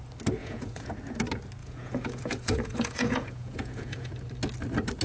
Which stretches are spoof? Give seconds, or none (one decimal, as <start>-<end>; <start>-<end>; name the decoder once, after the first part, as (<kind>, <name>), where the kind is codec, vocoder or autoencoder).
0.4-0.9 (vocoder, Vocos); 1.6-4.1